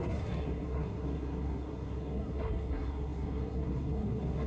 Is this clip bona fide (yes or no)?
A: no